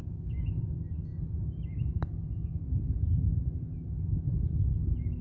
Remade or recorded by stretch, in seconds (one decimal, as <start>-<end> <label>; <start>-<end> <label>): 0.0-0.6 remade; 0.6-5.2 recorded

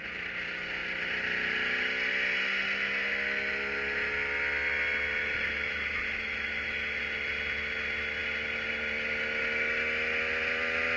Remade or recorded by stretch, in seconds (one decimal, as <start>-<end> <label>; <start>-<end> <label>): 0.0-5.2 recorded; 5.2-7.0 remade; 7.0-11.0 recorded

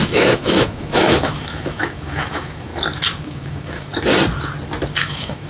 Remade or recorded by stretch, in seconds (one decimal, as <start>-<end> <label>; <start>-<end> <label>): 0.0-2.7 remade; 2.7-3.2 recorded; 3.2-3.9 remade; 3.9-5.0 recorded; 5.0-5.5 remade

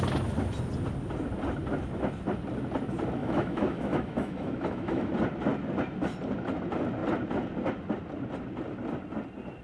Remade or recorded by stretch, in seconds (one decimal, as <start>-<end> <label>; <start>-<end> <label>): 0.0-3.2 recorded; 3.2-5.1 remade; 5.1-9.6 recorded

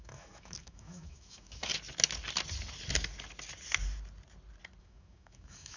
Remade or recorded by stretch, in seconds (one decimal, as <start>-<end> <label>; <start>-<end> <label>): 0.0-1.7 remade; 1.7-4.8 recorded; 4.8-5.8 remade

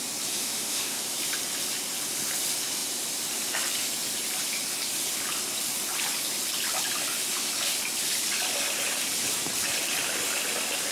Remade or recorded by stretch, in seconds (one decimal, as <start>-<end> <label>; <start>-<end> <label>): 0.0-0.4 recorded; 0.4-1.0 remade; 1.0-10.9 recorded

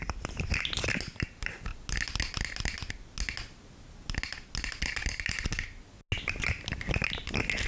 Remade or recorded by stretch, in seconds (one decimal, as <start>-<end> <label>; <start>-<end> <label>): 0.0-7.7 recorded

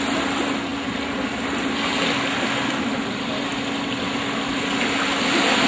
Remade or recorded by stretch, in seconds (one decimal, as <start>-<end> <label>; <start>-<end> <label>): 0.0-5.7 recorded